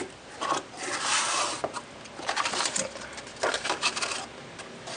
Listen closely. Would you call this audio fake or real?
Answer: real